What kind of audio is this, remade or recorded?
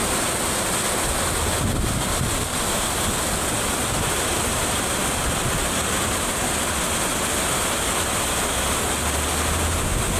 recorded